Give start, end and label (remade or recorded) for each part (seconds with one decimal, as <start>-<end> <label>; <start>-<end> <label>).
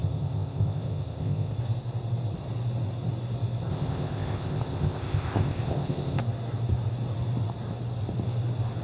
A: 0.0-1.6 remade; 1.6-3.7 recorded; 3.7-6.2 remade; 6.2-8.8 recorded